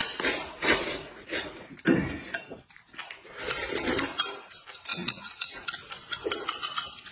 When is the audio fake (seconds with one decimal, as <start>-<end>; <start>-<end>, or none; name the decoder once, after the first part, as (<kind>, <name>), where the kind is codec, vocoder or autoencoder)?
0.0-1.8 (vocoder, Vocos); 4.9-5.9